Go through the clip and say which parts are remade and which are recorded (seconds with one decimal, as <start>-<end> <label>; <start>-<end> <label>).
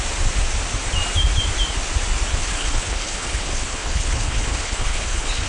0.0-2.4 recorded; 2.4-5.5 remade